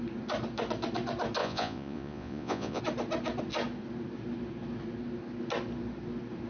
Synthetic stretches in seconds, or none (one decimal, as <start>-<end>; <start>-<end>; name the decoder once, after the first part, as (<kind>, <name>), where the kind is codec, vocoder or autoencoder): 1.4-2.8 (vocoder, Vocos)